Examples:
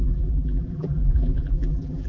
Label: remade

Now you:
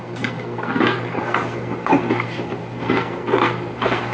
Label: remade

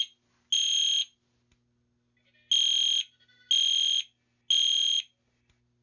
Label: recorded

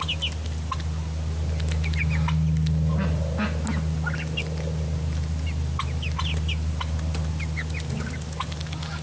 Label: recorded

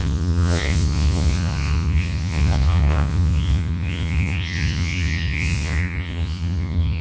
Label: remade